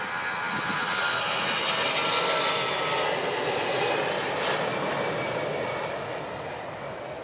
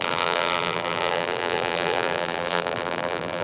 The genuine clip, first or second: first